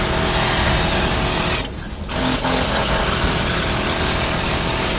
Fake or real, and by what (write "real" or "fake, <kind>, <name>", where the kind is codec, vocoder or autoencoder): real